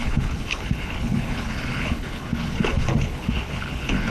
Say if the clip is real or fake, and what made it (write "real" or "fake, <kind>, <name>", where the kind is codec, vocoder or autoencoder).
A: fake, codec, HILCodec